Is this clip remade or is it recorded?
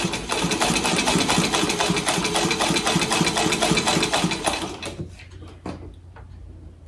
recorded